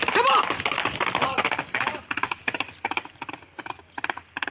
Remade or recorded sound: recorded